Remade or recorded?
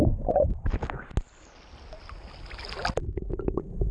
recorded